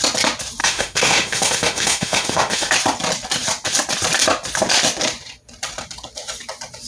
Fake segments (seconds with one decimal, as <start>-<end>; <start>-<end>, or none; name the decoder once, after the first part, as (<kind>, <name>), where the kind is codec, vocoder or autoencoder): 0.6-2.7 (autoencoder, DAC-VAE)